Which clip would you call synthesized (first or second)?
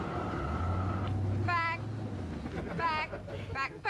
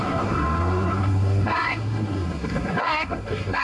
second